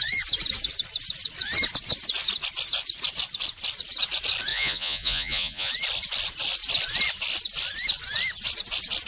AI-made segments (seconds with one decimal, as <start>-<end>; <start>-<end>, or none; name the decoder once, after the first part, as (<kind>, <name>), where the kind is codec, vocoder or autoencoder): 4.5-5.7 (vocoder, Vocos)